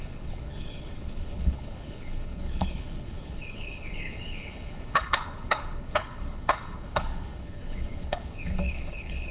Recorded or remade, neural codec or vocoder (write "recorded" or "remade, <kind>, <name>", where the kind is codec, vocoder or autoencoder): remade, codec, HILCodec